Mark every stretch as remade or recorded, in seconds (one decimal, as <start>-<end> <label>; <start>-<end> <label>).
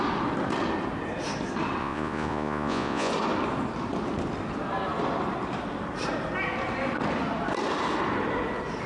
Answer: 0.0-1.8 recorded; 1.8-3.1 remade; 3.1-8.9 recorded